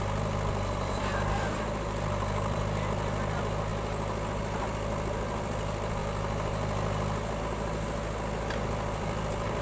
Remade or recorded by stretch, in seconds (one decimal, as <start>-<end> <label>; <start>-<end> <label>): 0.0-3.7 remade; 3.7-4.3 recorded; 4.3-6.0 remade; 6.0-7.4 recorded; 7.4-9.6 remade